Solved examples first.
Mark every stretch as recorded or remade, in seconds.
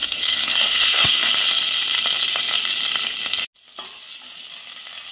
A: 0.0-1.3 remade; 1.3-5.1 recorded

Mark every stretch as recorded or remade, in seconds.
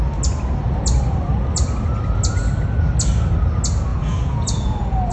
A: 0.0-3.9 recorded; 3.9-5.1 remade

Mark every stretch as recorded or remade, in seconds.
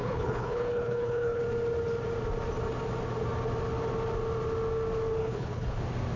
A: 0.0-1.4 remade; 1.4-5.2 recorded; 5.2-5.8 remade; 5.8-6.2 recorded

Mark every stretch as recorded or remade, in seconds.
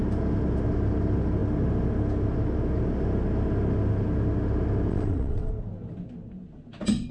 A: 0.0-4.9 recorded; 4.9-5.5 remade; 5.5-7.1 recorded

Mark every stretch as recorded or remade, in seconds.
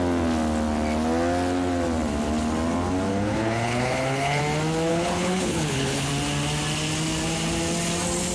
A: 0.0-3.1 recorded; 3.1-4.4 remade; 4.4-4.9 recorded; 4.9-6.1 remade; 6.1-8.3 recorded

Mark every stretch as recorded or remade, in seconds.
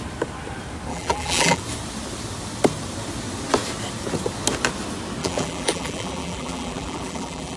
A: 0.0-0.9 recorded; 0.9-1.6 remade; 1.6-5.2 recorded; 5.2-7.6 remade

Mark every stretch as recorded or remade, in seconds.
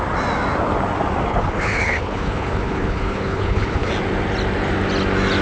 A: 0.0-1.3 recorded; 1.3-3.9 remade; 3.9-5.4 recorded